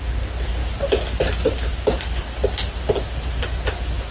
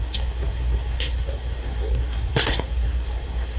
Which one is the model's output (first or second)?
second